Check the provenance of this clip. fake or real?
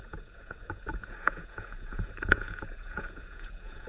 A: fake